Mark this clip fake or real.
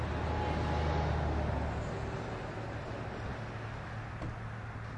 real